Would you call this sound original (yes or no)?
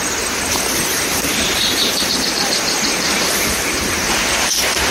no